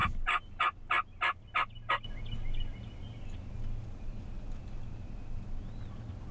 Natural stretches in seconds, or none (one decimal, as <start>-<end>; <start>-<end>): 0.0-6.3